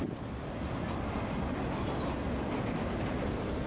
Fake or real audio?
real